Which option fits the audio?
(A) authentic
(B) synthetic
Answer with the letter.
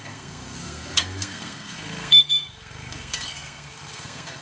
B